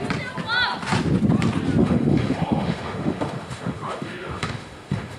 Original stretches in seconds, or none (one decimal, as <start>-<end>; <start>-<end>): 0.0-1.8